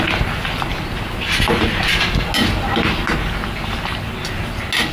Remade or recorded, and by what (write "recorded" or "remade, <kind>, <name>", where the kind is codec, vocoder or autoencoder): recorded